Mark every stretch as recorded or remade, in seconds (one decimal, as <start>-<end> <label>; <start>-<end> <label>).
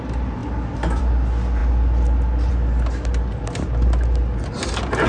0.0-5.1 recorded